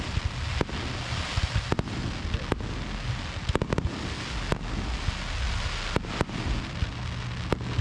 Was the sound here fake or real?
real